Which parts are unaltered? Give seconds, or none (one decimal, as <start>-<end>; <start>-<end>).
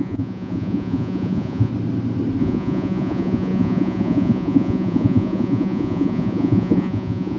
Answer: 1.7-2.4